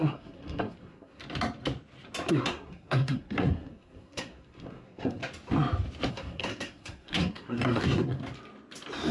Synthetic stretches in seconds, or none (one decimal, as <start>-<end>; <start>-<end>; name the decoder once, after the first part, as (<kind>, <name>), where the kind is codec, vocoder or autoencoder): 0.0-1.2 (codec, SNAC); 2.3-5.2; 6.1-8.2